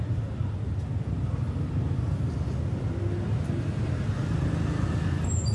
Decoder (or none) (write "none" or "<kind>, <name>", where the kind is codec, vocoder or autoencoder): none